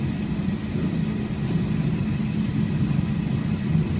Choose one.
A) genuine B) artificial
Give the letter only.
A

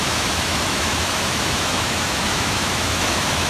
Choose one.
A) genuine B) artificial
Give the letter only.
B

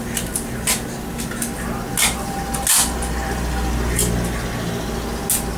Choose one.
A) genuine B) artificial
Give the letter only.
A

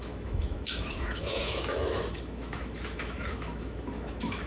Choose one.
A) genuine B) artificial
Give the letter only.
B